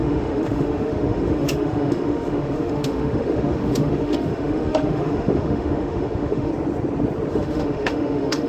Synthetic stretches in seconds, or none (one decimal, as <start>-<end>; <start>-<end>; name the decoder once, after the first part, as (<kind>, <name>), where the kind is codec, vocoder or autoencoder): 0.0-6.5 (autoencoder, DAC-VAE); 7.3-8.5